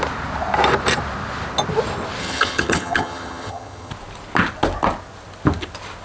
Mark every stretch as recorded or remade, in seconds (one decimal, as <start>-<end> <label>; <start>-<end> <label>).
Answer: 0.0-2.2 recorded; 2.2-3.9 remade; 3.9-6.0 recorded